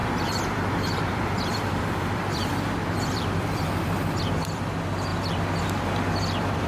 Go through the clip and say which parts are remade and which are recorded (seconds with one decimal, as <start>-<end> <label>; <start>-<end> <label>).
0.0-5.1 remade; 5.1-5.6 recorded; 5.6-6.7 remade